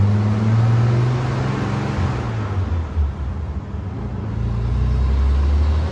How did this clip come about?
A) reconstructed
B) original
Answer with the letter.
B